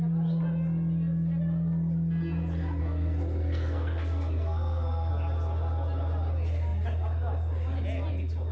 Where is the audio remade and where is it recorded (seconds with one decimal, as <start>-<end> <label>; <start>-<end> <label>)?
0.0-2.8 recorded; 2.8-5.1 remade; 5.1-8.5 recorded